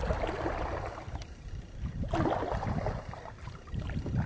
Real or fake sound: real